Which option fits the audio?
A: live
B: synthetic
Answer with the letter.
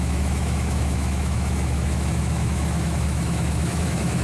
B